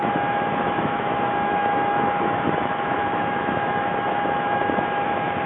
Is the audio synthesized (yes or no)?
yes